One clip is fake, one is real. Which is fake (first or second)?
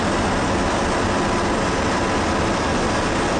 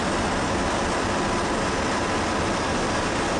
second